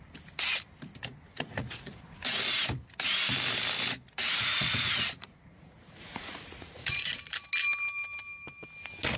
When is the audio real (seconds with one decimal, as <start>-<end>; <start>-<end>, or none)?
0.0-1.3; 2.4-4.2; 7.0-9.2